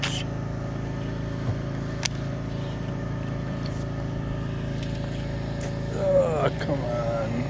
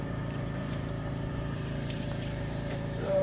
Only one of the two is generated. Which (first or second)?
second